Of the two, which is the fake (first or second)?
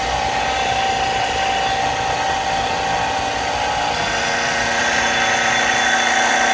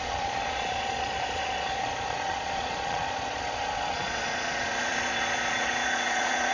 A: second